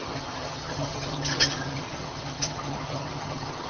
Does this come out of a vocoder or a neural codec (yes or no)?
yes